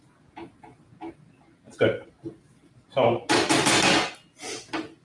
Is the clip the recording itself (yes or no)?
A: yes